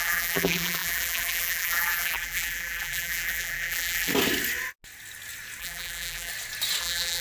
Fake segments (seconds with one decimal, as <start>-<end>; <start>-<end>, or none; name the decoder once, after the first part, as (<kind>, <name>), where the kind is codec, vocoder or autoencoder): 0.0-4.1 (vocoder, BigVGAN v2); 5.6-6.3; 6.8-7.2